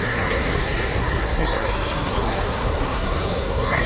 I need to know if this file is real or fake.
fake